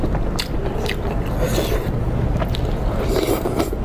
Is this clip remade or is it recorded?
recorded